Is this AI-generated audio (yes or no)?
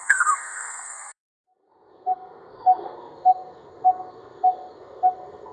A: yes